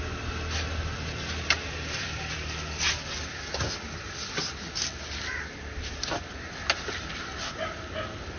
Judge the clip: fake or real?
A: real